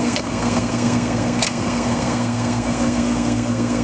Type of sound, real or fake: fake